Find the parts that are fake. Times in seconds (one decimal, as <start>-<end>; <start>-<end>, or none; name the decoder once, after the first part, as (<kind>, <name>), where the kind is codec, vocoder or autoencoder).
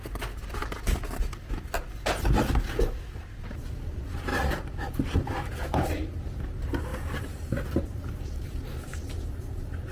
4.3-6.5 (vocoder, BigVGAN v2); 6.9-7.8